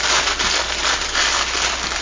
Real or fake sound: real